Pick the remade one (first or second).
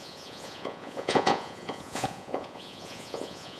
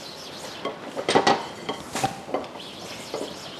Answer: first